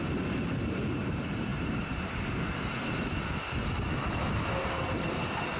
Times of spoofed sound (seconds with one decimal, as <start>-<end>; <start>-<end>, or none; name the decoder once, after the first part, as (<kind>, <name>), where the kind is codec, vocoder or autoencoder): none